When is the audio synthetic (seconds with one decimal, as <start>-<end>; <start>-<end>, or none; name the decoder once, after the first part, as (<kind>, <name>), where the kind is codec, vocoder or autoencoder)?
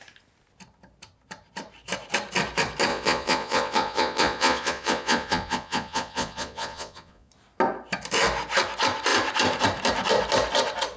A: 2.9-7.3 (vocoder, Vocos)